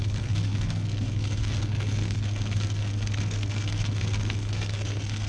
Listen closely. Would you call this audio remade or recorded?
remade